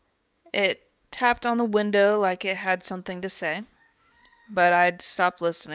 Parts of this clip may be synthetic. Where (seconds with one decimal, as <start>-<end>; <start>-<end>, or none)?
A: 0.0-5.7